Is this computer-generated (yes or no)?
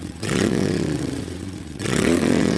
yes